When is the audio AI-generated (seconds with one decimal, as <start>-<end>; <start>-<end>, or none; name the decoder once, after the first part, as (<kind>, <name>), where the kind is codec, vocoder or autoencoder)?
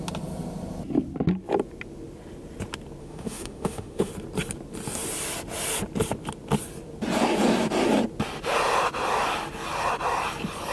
3.0-4.1 (autoencoder, DAC-VAE)